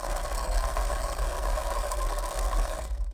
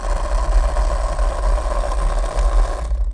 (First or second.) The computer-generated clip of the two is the first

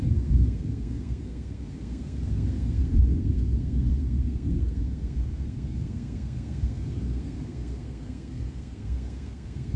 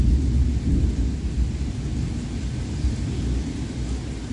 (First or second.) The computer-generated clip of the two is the first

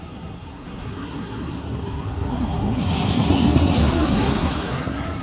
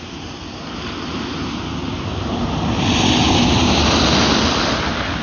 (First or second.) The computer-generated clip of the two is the first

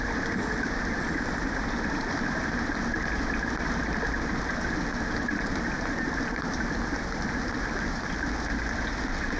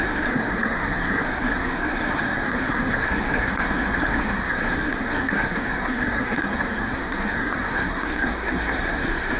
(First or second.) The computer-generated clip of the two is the second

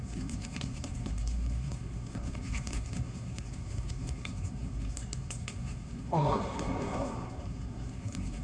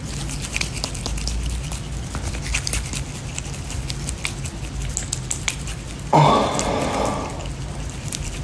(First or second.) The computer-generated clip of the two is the first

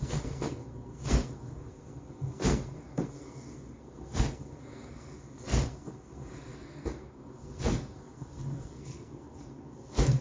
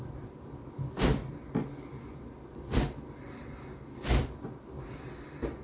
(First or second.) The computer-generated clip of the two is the first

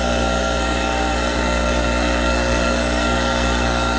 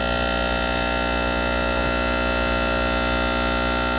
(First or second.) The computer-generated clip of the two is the first